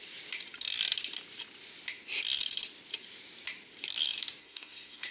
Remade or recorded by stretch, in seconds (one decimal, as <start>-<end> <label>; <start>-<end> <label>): 0.0-4.4 recorded; 4.4-5.1 remade